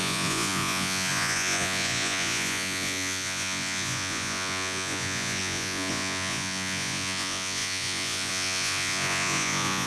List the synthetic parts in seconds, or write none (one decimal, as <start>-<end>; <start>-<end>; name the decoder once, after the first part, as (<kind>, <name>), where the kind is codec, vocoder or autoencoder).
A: 0.0-9.9 (vocoder, Vocos)